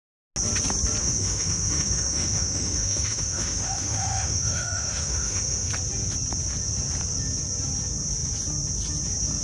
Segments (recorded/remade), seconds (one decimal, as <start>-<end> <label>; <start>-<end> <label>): 0.0-1.0 recorded; 1.0-5.7 remade; 5.7-9.4 recorded

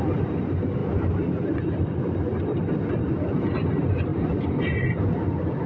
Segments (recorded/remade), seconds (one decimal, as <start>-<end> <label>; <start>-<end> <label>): 0.0-5.7 recorded